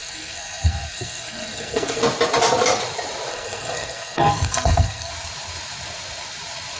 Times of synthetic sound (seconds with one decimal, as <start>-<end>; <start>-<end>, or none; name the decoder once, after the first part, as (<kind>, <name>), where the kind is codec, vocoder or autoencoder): 0.0-2.0 (codec, SNAC); 3.3-5.1